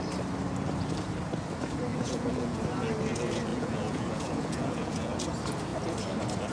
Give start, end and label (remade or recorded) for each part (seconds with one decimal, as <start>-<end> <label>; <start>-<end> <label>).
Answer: 0.0-1.9 recorded; 1.9-2.6 remade; 2.6-3.5 recorded; 3.5-5.1 remade; 5.1-6.5 recorded